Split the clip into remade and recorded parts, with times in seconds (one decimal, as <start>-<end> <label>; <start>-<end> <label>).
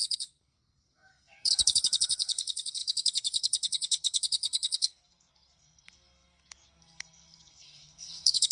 0.0-8.5 remade